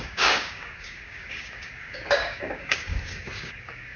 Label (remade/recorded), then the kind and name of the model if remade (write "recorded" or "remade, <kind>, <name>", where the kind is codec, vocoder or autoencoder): remade, codec, DAC